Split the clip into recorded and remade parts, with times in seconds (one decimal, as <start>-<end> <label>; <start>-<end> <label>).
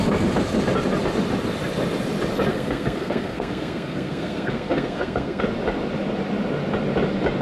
0.0-2.5 recorded; 2.5-5.4 remade; 5.4-7.4 recorded